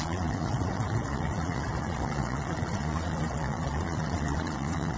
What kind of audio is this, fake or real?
fake